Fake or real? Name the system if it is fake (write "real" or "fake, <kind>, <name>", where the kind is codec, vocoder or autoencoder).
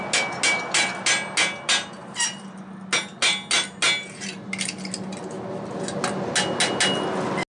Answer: real